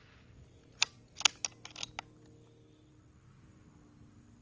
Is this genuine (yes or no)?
yes